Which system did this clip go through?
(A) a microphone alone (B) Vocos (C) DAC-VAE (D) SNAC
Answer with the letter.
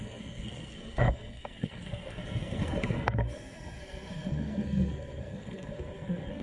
D